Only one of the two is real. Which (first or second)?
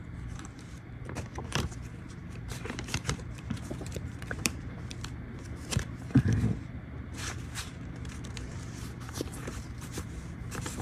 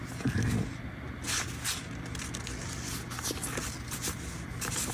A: second